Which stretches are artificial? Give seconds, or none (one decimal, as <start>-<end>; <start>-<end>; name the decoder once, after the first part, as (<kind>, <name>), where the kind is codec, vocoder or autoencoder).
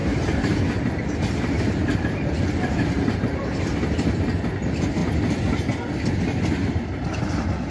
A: 0.0-0.6 (vocoder, BigVGAN v2); 1.9-3.2